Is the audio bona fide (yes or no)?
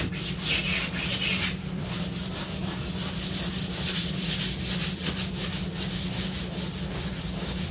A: yes